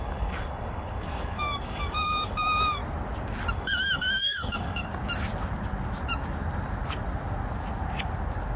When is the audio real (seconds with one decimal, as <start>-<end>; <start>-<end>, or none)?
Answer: 2.8-3.5; 4.9-8.6